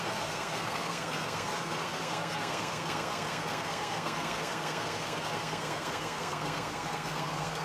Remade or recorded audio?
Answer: remade